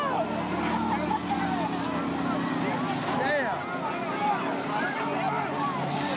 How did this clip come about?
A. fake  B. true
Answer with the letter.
B